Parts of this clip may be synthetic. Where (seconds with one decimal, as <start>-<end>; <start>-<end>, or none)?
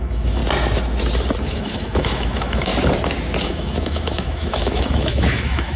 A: 0.0-0.4; 1.5-2.7; 3.4-5.8